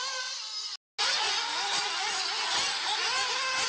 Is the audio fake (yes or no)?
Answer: no